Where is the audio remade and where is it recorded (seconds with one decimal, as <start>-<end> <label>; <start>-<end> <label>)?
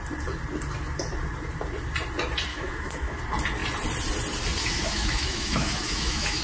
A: 0.0-2.5 recorded; 2.5-3.2 remade; 3.2-4.6 recorded; 4.6-6.4 remade